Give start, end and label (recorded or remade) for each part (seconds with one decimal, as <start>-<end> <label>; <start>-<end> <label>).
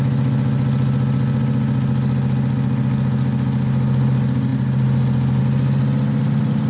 0.0-6.7 recorded